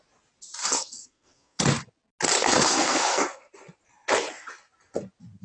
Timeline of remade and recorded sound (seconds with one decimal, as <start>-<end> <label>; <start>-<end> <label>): 0.0-0.6 recorded; 0.6-1.6 remade; 1.6-2.4 recorded; 2.4-3.5 remade; 3.5-5.4 recorded